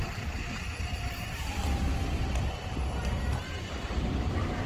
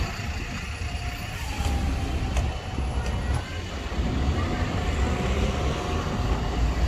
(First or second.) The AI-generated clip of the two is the first